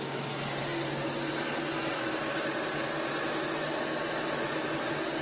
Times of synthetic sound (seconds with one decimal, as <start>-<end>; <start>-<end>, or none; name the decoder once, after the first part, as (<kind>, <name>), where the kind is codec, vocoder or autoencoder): none